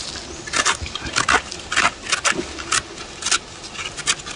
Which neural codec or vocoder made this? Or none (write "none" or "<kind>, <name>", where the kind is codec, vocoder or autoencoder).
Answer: none